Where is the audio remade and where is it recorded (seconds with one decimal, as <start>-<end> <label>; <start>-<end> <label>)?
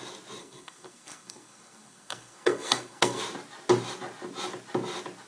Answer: 0.0-0.4 recorded; 0.4-3.2 remade; 3.2-5.3 recorded